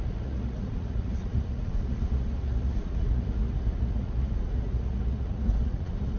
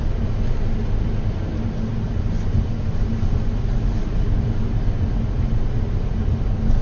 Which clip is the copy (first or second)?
first